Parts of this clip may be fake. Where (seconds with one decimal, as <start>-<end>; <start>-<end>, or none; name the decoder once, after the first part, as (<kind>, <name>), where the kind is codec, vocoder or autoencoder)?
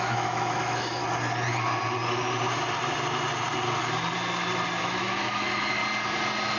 0.0-1.0 (autoencoder, DAC-VAE); 4.8-5.8